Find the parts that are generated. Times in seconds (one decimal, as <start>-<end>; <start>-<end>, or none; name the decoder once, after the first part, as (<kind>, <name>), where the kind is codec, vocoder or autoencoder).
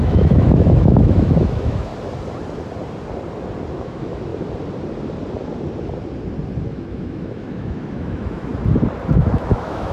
0.0-1.9 (autoencoder, DAC-VAE); 3.7-4.3; 6.7-8.5; 9.1-9.9